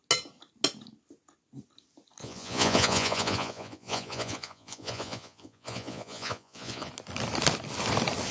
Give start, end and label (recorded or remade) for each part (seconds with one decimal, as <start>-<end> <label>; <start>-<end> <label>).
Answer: 0.0-2.2 recorded; 2.2-6.9 remade; 6.9-8.3 recorded